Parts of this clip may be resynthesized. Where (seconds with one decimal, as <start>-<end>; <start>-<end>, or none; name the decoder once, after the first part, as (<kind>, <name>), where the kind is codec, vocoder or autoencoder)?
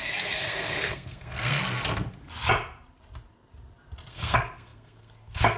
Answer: 0.0-1.6 (codec, SNAC); 4.1-5.6